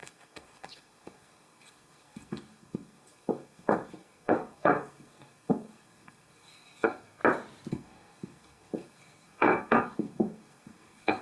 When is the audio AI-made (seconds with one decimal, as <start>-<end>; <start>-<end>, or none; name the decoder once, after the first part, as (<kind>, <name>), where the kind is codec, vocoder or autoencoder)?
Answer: 0.0-7.2 (codec, SNAC); 7.7-11.2